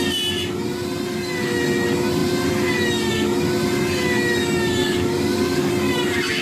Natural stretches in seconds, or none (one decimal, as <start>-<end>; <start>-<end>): 0.0-4.8; 5.7-6.4

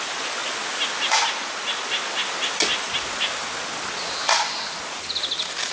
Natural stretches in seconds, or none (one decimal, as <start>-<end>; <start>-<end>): 0.0-5.7